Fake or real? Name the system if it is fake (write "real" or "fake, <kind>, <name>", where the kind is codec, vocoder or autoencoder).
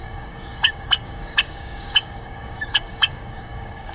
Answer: fake, codec, DAC